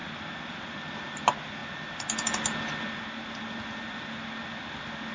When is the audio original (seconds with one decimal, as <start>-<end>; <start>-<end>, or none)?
0.0-5.1